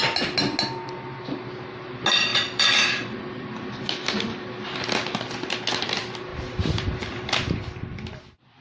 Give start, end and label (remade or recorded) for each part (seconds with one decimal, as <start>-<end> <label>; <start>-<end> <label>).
0.0-2.3 recorded; 2.3-3.8 remade; 3.8-6.3 recorded; 6.3-8.2 remade; 8.2-8.6 recorded